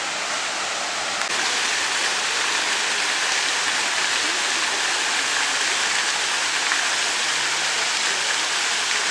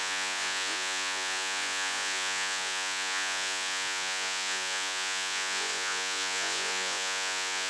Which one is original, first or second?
first